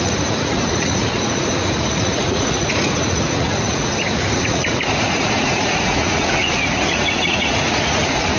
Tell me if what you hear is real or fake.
fake